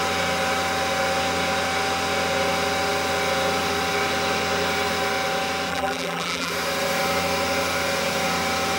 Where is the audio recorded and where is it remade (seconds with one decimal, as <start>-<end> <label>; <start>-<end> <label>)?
0.0-5.7 recorded; 5.7-6.5 remade; 6.5-8.8 recorded